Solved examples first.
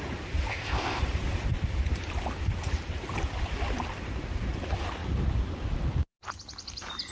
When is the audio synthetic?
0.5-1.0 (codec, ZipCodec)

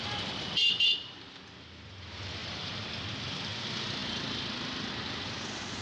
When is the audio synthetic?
2.4-3.2 (vocoder, BigVGAN v2)

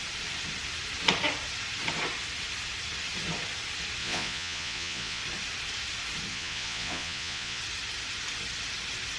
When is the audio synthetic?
4.0-5.2 (vocoder, Vocos); 6.3-7.6

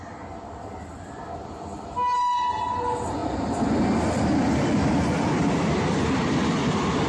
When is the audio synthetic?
none

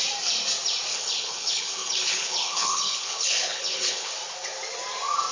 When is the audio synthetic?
0.9-4.1 (codec, HILCodec)

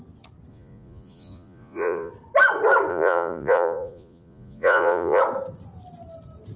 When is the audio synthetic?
0.5-2.1 (vocoder, Vocos); 2.9-5.2

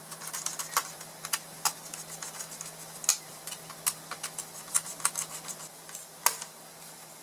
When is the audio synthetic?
none